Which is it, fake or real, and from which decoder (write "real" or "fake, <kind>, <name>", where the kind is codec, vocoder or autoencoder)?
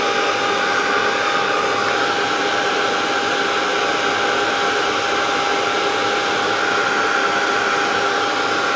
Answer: real